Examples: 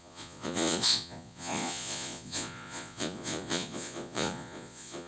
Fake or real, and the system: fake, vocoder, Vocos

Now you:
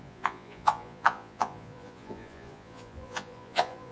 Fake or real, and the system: fake, vocoder, Vocos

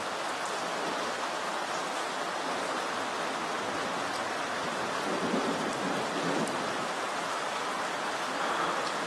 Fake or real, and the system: real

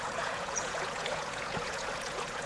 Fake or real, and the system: fake, vocoder, Vocos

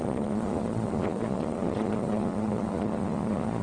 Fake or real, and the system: fake, vocoder, Vocos